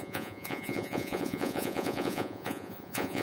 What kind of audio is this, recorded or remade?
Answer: remade